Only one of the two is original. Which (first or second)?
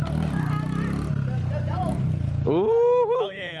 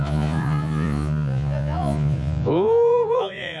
first